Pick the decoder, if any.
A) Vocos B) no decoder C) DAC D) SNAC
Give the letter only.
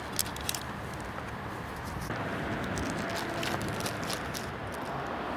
B